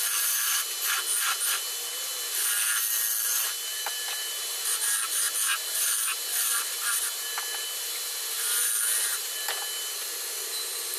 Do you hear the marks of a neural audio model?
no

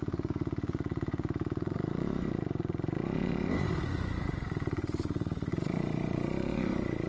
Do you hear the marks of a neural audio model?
yes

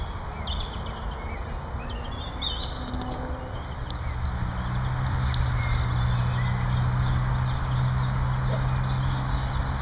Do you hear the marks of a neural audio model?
no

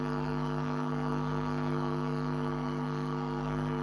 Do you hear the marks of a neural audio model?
yes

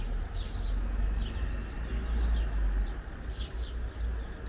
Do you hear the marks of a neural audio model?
no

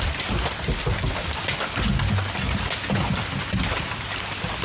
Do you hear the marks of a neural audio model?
no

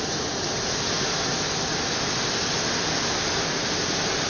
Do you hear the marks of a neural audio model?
no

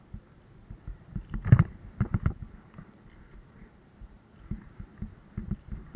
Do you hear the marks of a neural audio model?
no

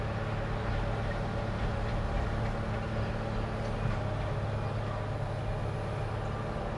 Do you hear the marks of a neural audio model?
no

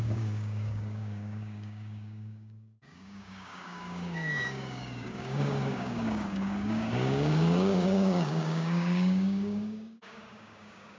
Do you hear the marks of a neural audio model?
yes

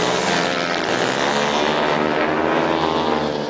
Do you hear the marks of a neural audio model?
no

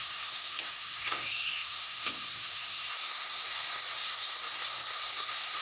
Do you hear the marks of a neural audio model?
yes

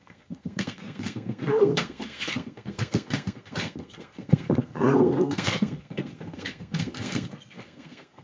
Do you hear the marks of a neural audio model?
yes